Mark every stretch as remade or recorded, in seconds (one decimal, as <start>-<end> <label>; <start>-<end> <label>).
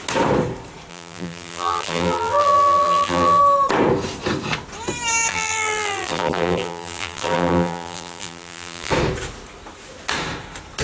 0.0-0.9 recorded; 0.9-3.4 remade; 3.4-5.3 recorded; 5.3-8.9 remade; 8.9-10.8 recorded